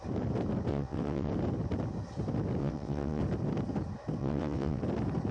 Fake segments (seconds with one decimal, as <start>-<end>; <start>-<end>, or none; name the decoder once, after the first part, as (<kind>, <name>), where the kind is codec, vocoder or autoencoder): 0.7-1.3 (vocoder, WaveNeXt); 2.6-3.2; 4.2-4.8